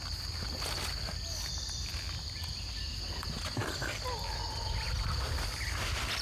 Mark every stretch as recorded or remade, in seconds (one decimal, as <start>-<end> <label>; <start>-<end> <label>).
0.0-6.2 recorded

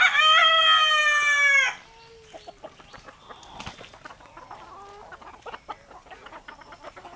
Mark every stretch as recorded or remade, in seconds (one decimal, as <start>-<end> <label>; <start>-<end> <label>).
0.0-7.2 recorded